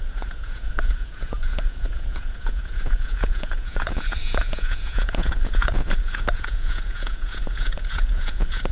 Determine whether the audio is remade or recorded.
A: remade